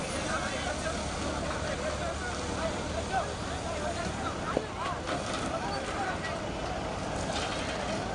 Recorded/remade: recorded